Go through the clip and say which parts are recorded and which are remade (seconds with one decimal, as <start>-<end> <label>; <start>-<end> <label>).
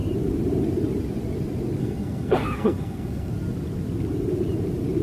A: 0.0-1.8 recorded; 1.8-3.3 remade; 3.3-5.0 recorded